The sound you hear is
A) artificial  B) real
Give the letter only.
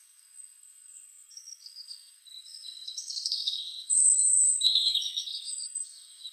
A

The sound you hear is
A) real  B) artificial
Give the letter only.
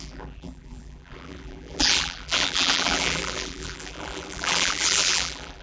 B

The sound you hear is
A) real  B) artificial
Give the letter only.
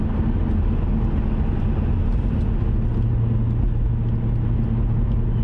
A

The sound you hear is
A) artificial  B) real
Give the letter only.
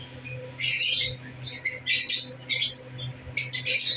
B